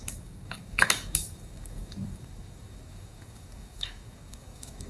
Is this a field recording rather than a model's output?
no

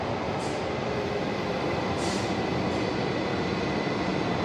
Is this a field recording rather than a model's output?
yes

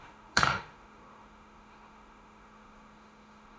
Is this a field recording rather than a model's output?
no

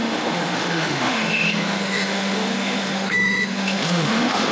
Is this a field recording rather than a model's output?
no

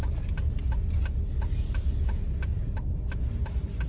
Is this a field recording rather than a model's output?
yes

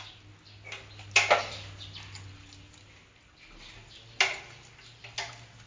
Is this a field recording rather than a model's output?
yes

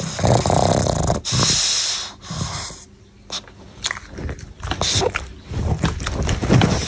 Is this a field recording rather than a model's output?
yes